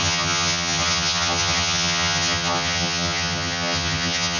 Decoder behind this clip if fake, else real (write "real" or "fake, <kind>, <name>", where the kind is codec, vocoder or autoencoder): fake, vocoder, HiFi-GAN